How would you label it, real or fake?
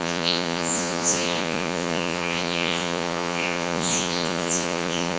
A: fake